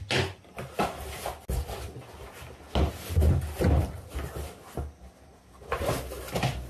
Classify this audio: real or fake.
real